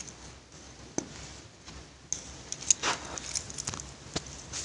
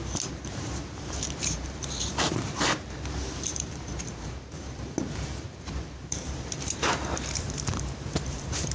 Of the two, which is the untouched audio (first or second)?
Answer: first